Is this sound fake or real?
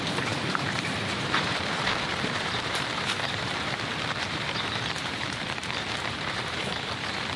fake